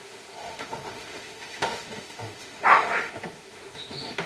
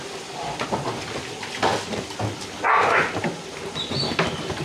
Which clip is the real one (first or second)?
second